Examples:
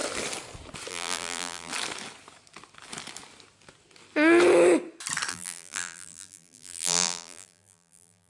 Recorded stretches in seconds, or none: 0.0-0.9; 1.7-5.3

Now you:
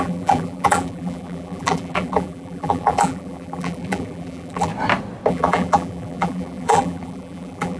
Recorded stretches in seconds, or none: 4.7-5.3

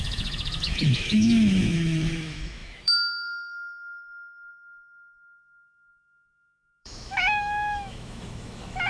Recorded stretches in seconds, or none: none

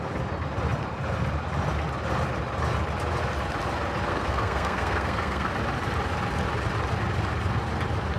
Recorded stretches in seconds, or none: 0.0-4.1; 5.5-8.2

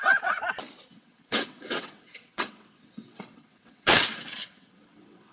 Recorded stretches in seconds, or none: 0.4-0.9

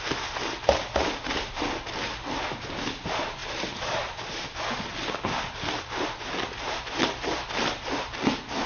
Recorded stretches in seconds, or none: 0.0-8.7

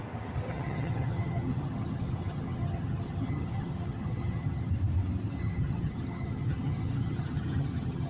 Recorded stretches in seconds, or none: 0.0-0.5; 4.7-5.4